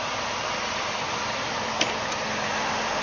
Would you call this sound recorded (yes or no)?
yes